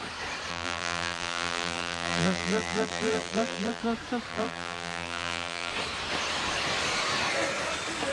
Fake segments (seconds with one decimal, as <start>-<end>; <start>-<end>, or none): 0.5-3.8; 4.3-5.7